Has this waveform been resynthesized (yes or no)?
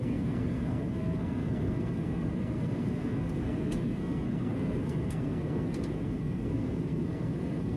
yes